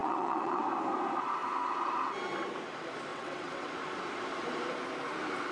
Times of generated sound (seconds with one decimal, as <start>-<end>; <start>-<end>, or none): 0.0-0.6; 3.1-3.7